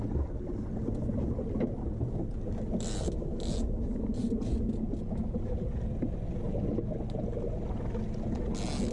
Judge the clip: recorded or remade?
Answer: recorded